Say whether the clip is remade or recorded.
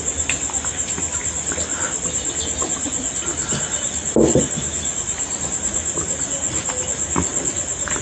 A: recorded